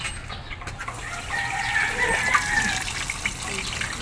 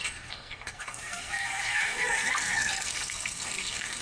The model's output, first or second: second